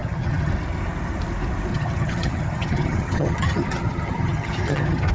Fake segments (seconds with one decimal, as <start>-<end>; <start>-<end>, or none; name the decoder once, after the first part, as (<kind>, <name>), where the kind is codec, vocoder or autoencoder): 0.0-0.5 (vocoder, HiFi-GAN); 1.7-5.1